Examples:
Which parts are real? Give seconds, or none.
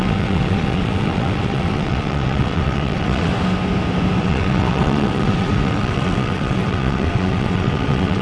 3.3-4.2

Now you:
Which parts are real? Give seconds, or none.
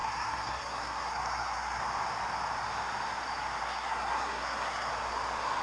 1.8-3.6; 4.9-5.6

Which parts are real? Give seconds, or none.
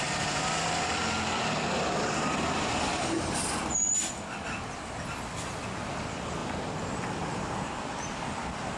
0.0-6.4; 7.7-8.8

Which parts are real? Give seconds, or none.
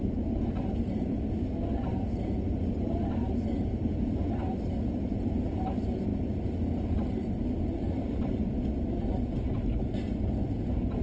0.0-11.0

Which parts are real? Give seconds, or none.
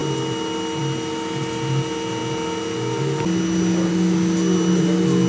0.0-5.3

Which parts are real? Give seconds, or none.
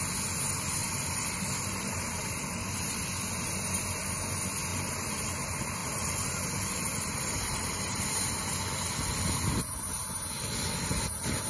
0.0-0.8; 3.0-4.7; 5.3-5.8; 8.0-11.5